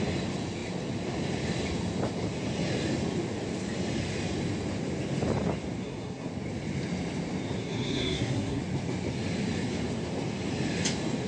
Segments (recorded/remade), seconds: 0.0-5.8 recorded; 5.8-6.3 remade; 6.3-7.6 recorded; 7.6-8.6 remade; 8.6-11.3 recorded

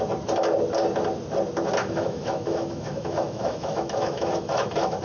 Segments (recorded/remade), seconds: 0.0-1.8 recorded; 1.8-5.0 remade

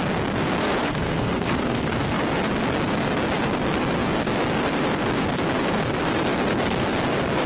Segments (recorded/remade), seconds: 0.0-0.8 recorded; 0.8-1.9 remade; 1.9-7.5 recorded